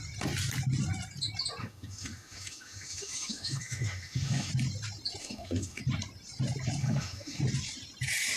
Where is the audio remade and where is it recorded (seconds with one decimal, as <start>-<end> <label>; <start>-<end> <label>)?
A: 0.0-1.6 recorded; 1.6-4.5 remade; 4.5-5.2 recorded; 5.2-5.8 remade; 5.8-6.8 recorded; 6.8-7.4 remade; 7.4-8.4 recorded